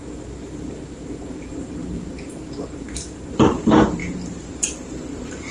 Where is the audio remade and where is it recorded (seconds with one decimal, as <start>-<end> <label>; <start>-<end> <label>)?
0.0-5.5 remade